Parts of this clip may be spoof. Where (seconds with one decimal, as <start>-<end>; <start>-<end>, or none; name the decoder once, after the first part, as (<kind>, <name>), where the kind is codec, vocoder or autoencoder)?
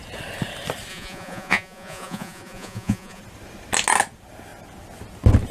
0.9-3.2 (vocoder, Vocos)